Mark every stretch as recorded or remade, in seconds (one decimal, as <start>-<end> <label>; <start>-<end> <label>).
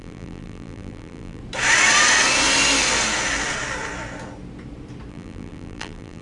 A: 0.0-1.4 remade; 1.4-5.1 recorded; 5.1-6.2 remade